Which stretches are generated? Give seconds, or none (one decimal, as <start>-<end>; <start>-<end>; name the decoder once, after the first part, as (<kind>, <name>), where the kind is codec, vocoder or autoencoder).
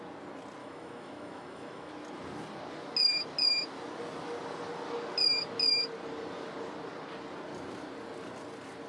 0.6-1.9 (autoencoder, DAC-VAE)